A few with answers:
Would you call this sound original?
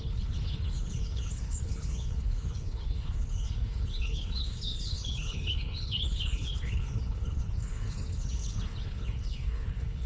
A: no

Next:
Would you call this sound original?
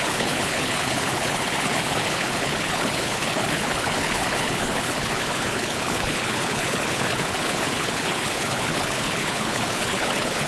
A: no